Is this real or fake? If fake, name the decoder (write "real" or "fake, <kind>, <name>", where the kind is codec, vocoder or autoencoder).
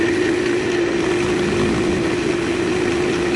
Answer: real